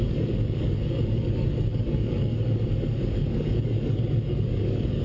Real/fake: fake